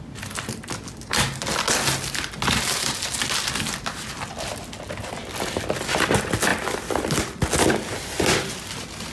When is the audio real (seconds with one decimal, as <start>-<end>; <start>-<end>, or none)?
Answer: 0.0-9.1